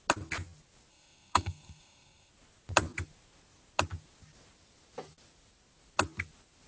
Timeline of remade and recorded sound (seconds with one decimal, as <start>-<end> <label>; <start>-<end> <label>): 0.0-0.9 recorded; 0.9-2.3 remade; 2.3-6.7 recorded